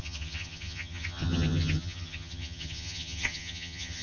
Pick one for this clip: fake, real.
fake